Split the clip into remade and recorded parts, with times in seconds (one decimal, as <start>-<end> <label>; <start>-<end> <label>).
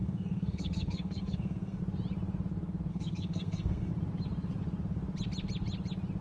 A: 0.0-1.8 remade; 1.8-2.9 recorded; 2.9-3.9 remade; 3.9-6.2 recorded